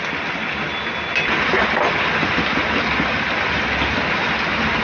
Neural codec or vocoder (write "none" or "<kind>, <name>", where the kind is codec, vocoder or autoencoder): none